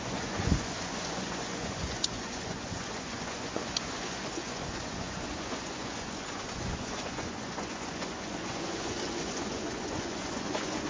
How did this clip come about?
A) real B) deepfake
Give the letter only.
B